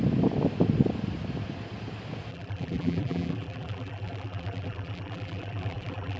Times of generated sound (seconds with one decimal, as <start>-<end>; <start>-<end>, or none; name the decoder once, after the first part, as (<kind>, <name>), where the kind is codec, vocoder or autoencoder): 2.3-6.2 (vocoder, BigVGAN v2)